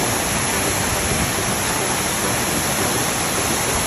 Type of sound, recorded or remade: recorded